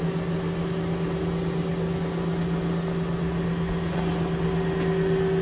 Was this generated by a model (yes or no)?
no